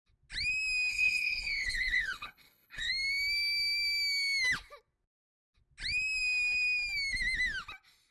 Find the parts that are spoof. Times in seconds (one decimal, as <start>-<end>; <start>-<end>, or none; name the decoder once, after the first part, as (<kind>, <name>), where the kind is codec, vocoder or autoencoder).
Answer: 0.9-2.9 (codec, HILCodec)